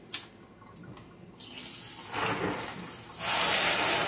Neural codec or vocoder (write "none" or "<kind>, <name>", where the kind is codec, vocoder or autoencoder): none